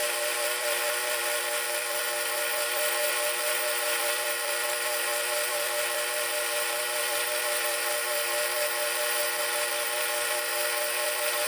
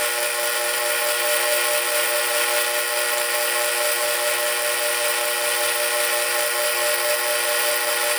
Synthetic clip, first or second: first